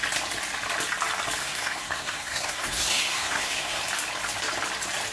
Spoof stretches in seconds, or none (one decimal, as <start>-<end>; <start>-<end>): 1.4-3.8